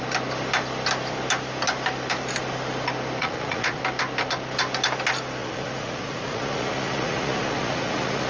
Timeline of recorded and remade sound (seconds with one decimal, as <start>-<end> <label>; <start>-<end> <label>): 0.0-3.2 recorded; 3.2-3.8 remade; 3.8-5.4 recorded; 5.4-8.3 remade